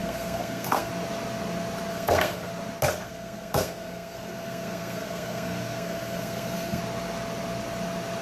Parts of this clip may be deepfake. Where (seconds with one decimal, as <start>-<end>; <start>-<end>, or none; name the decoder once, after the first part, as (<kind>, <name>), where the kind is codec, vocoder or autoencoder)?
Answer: 0.0-0.9 (codec, SNAC); 1.9-2.5; 2.9-6.8